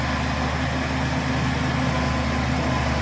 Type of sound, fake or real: real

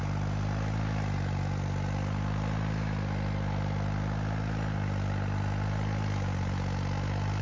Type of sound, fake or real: real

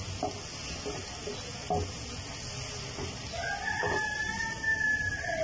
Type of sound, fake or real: real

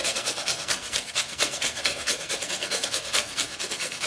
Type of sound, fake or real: fake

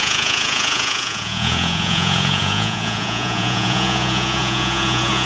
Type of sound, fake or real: fake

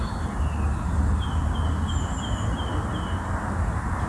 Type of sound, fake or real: real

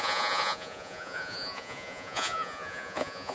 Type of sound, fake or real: fake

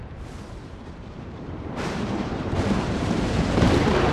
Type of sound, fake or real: fake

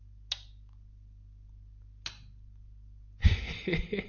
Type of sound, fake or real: real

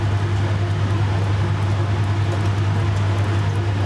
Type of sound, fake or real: real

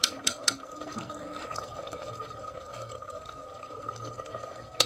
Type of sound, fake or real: fake